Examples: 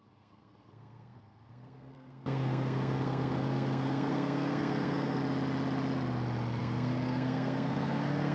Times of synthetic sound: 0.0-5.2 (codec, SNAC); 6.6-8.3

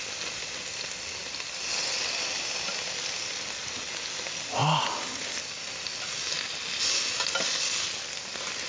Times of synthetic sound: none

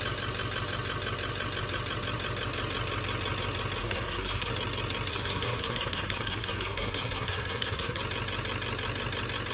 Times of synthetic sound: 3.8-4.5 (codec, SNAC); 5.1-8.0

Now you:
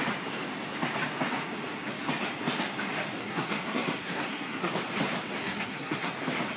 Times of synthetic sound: 3.2-4.7 (codec, SNAC); 5.4-6.1